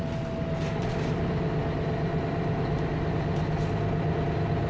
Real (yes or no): yes